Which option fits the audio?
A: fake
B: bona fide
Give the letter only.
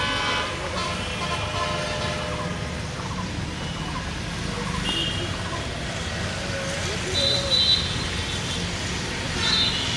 B